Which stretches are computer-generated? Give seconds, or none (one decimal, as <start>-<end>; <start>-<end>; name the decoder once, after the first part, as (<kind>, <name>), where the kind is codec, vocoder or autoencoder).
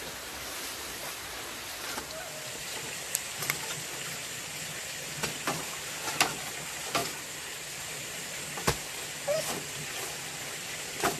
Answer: 1.0-4.9 (vocoder, BigVGAN v2); 7.0-7.8